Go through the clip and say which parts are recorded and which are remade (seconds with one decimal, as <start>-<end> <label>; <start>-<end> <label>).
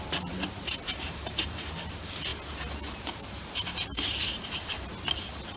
0.0-2.3 remade; 2.3-3.7 recorded; 3.7-4.3 remade; 4.3-5.6 recorded